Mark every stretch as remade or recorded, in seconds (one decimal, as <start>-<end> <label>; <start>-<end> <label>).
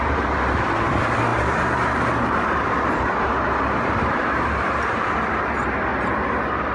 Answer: 0.0-1.3 recorded; 1.3-5.1 remade; 5.1-5.9 recorded; 5.9-6.7 remade